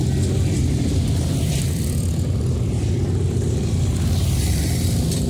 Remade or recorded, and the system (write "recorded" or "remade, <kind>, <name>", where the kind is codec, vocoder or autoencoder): recorded